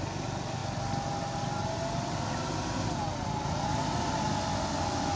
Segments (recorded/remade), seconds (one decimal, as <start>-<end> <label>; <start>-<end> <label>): 0.0-5.2 recorded